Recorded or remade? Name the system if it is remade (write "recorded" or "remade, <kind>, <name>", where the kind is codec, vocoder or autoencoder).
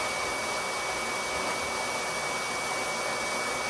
recorded